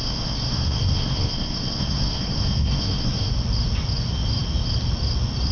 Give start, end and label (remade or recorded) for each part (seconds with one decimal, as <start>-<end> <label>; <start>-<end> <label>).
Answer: 0.0-3.3 remade; 3.3-5.5 recorded